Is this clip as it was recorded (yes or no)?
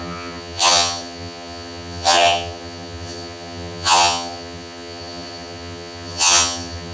no